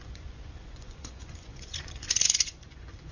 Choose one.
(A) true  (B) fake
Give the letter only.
B